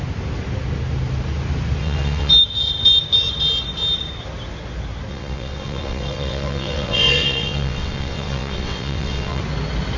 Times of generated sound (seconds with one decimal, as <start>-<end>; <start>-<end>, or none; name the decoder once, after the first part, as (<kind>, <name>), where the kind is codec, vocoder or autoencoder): 1.8-2.3 (vocoder, WaveNeXt); 5.1-9.4